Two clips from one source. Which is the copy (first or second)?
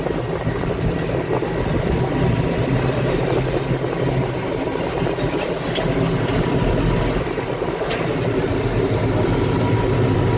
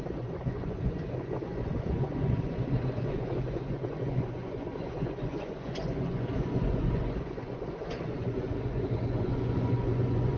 second